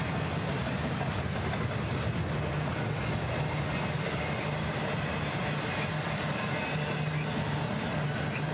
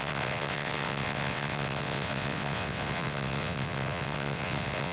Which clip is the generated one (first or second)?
second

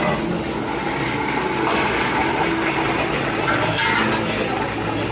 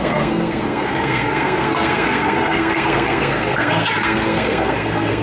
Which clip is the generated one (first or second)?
second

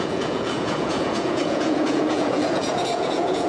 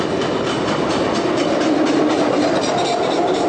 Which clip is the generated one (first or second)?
first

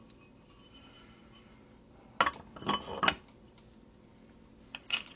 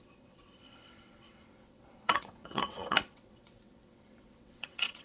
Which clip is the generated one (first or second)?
second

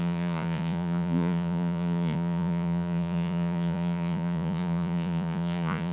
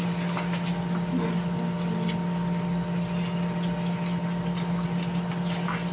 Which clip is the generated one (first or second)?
first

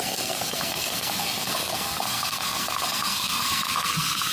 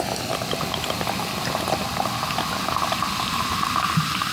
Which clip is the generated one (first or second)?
first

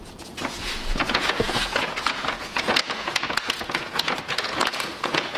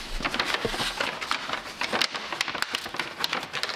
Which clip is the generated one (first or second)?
first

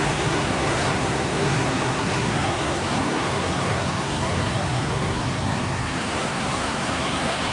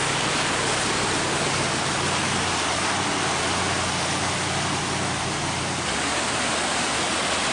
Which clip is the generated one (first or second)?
first